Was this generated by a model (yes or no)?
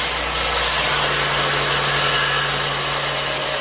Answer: no